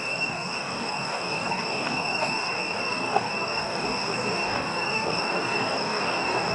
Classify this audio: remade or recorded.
remade